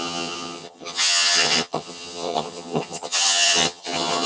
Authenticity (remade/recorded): remade